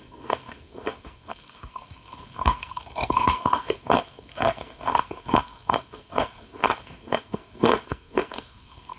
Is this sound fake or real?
fake